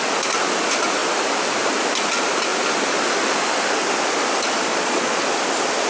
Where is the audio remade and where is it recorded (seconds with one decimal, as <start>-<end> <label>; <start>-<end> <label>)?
0.0-4.7 recorded; 4.7-5.2 remade; 5.2-5.9 recorded